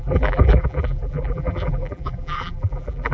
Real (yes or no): no